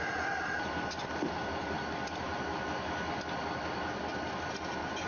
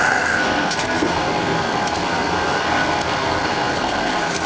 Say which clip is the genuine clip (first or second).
first